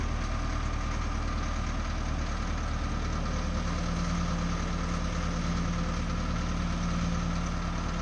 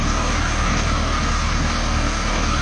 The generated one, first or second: second